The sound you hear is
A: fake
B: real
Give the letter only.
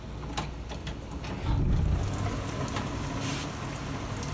B